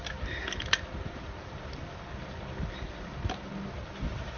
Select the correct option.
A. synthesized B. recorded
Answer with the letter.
B